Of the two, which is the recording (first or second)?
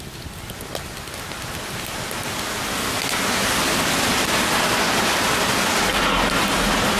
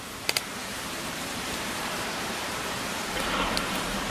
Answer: first